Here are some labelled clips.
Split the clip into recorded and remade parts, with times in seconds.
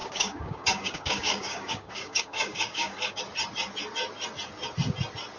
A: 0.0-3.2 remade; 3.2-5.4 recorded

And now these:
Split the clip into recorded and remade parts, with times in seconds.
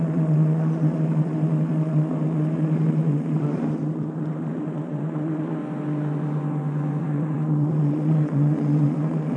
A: 0.0-5.6 remade; 5.6-7.0 recorded; 7.0-9.4 remade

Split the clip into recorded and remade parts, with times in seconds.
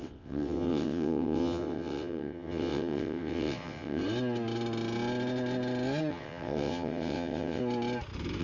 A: 0.0-4.0 remade; 4.0-6.1 recorded; 6.1-7.6 remade; 7.6-8.4 recorded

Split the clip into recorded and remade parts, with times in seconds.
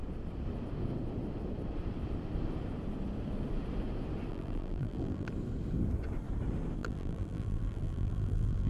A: 0.0-4.3 recorded; 4.3-5.3 remade; 5.3-6.8 recorded; 6.8-8.7 remade